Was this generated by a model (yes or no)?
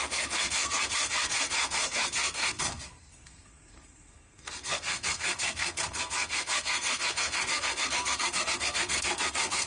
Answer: yes